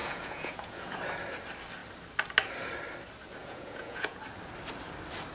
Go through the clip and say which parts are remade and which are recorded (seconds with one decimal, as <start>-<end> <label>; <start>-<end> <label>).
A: 0.0-1.0 remade; 1.0-3.4 recorded; 3.4-4.2 remade; 4.2-5.3 recorded